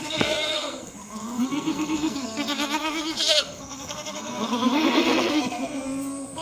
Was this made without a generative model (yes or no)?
no